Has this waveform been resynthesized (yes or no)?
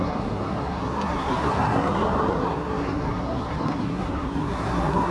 yes